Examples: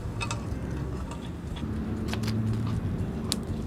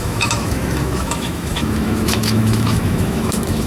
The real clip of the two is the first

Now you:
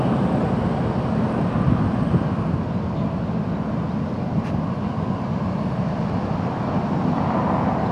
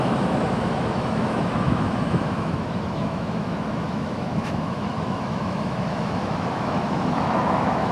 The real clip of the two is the first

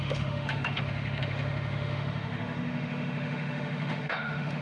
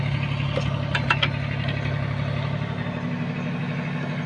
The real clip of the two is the second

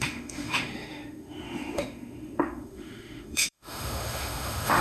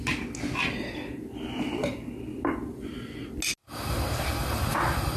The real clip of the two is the second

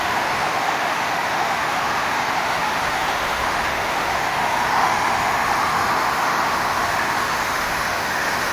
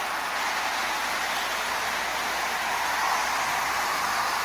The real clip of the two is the second